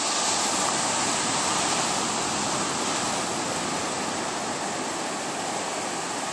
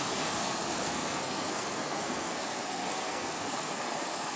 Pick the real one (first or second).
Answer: first